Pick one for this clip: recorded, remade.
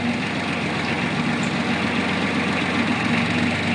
recorded